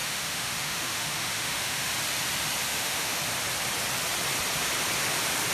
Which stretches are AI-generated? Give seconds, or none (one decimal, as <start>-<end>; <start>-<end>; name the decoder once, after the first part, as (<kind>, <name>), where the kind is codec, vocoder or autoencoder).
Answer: 0.0-1.9 (autoencoder, DAC-VAE); 2.7-3.2